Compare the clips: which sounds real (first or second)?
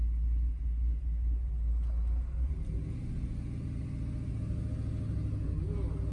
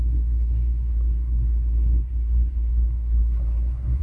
first